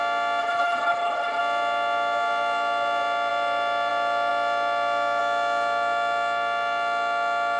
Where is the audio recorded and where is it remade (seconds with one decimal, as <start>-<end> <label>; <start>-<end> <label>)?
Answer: 0.0-0.4 recorded; 0.4-1.4 remade; 1.4-7.6 recorded